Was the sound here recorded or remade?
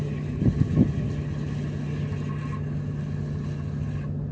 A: recorded